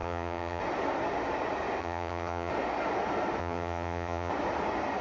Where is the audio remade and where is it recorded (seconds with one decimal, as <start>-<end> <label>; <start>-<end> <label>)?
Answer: 0.0-0.6 remade; 0.6-1.8 recorded; 1.8-2.5 remade; 2.5-3.4 recorded; 3.4-4.3 remade; 4.3-5.0 recorded